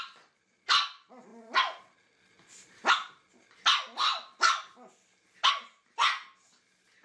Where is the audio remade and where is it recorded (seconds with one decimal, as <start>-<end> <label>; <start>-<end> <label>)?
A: 0.0-7.0 recorded